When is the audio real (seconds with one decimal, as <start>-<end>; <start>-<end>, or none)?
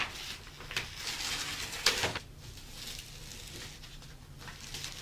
0.0-5.0